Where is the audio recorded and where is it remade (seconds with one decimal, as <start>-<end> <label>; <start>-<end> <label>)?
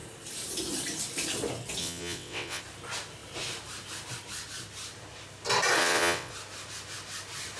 0.0-1.8 recorded; 1.8-2.6 remade; 2.6-5.8 recorded; 5.8-6.3 remade; 6.3-7.6 recorded